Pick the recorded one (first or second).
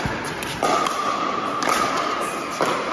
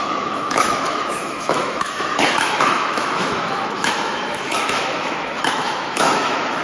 first